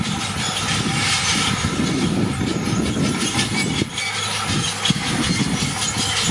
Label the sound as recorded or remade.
recorded